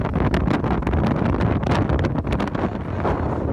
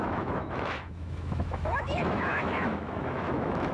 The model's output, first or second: second